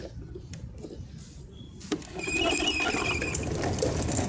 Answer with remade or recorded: recorded